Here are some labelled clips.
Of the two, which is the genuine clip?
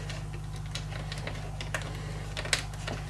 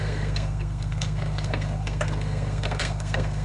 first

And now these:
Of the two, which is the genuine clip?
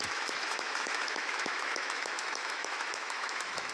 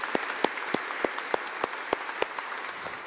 second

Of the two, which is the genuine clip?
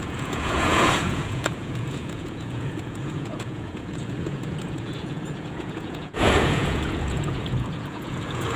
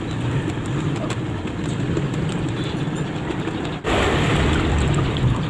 second